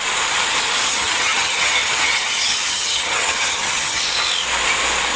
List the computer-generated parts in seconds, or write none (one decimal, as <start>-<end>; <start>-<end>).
0.9-4.0